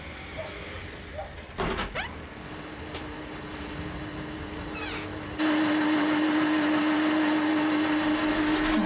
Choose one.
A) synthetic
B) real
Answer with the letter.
B